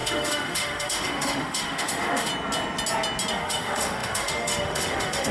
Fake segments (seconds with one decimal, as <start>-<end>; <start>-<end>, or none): 0.0-2.3; 3.3-5.3